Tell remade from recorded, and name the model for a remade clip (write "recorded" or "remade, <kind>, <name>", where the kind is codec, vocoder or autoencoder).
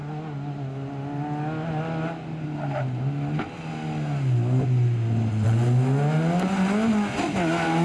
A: recorded